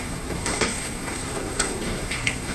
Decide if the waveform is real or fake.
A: fake